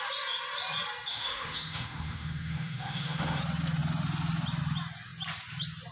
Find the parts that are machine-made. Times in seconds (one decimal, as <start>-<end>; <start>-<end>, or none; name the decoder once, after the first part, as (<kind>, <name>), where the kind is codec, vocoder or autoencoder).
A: 1.1-3.4 (autoencoder, DAC-VAE)